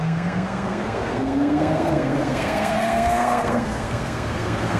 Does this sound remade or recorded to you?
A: remade